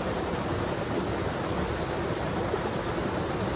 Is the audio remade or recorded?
recorded